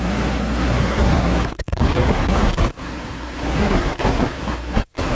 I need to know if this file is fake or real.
fake